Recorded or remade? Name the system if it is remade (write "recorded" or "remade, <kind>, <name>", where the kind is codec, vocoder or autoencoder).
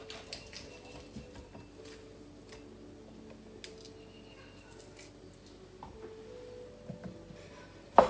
recorded